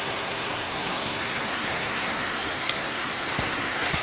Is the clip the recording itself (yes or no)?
no